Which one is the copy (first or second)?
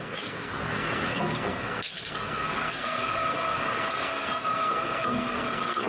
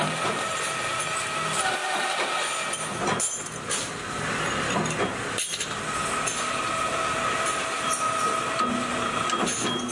first